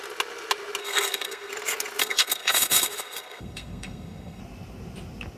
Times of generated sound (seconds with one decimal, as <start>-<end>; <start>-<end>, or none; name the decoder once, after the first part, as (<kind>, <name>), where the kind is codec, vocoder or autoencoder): 0.8-1.5 (codec, SNAC); 2.0-4.4

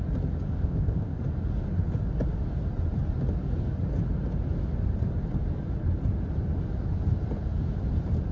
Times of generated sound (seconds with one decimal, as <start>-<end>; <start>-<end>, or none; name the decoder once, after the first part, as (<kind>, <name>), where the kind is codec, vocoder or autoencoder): 0.5-1.2 (codec, ZipCodec)

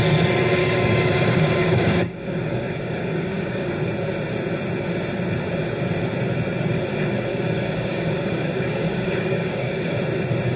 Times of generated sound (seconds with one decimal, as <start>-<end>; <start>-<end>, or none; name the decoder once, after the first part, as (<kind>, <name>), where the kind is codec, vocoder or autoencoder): 0.6-3.7 (codec, DAC); 7.3-10.0